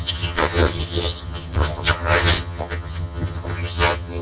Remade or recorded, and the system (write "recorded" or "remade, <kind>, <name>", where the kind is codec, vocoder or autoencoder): remade, vocoder, HiFi-GAN